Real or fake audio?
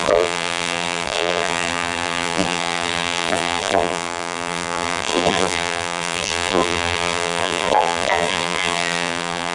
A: fake